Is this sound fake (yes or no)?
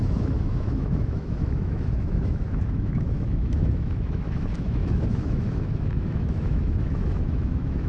yes